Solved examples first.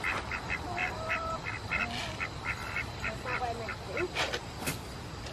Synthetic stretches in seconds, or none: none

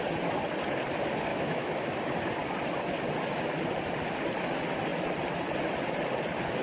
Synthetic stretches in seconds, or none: 1.3-2.0

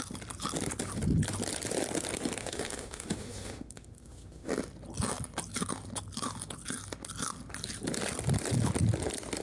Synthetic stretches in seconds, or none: 2.4-4.5

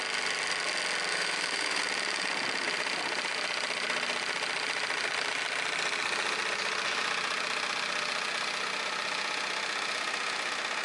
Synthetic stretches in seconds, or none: 1.1-1.8

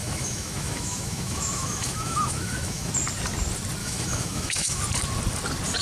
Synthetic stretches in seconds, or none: 0.0-2.9; 3.8-4.8

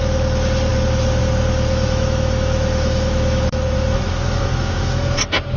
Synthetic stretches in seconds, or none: 1.7-5.1